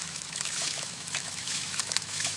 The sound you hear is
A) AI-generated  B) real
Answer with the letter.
A